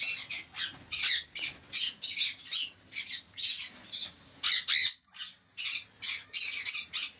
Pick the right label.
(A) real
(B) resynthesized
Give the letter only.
A